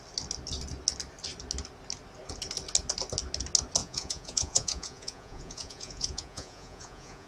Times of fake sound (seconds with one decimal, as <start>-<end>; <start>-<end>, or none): 3.8-7.3